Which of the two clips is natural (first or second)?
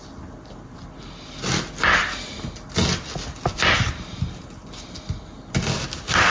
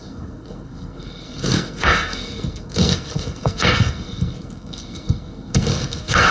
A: first